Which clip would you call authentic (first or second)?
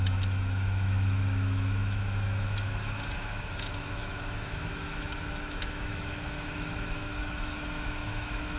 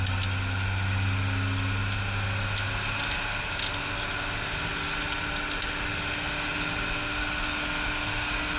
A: second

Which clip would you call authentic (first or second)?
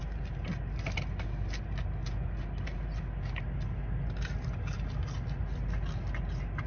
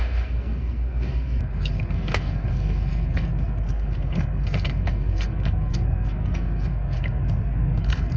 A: first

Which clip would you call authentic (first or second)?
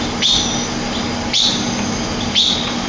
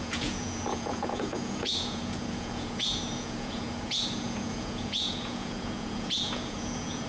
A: first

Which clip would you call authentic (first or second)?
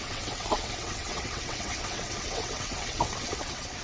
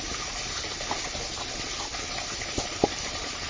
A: second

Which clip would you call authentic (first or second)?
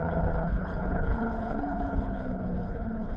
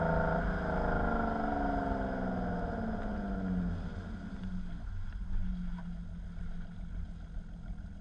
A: second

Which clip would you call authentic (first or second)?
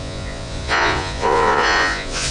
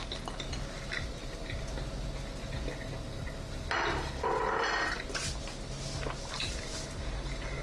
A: second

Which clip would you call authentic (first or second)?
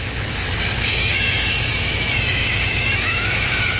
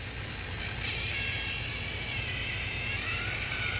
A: second